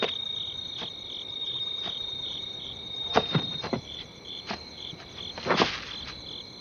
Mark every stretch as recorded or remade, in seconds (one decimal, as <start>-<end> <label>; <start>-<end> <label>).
0.0-1.4 recorded; 1.4-4.9 remade; 4.9-6.6 recorded